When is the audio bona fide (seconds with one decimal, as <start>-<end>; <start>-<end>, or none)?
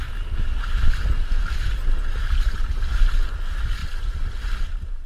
0.0-5.1